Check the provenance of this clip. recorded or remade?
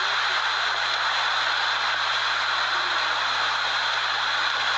recorded